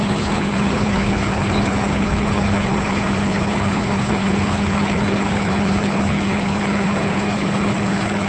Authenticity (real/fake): fake